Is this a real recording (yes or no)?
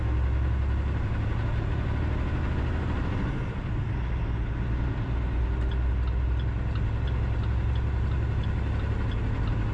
yes